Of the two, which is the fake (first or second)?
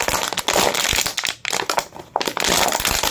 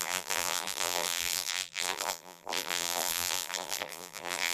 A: second